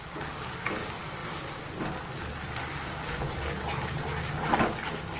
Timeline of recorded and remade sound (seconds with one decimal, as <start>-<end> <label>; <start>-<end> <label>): 0.0-5.2 recorded